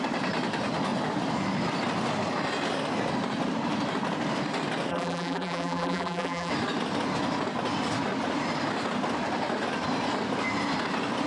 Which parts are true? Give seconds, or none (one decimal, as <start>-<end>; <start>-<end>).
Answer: 0.0-4.9; 6.5-11.3